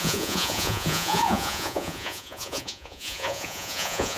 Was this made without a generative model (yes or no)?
no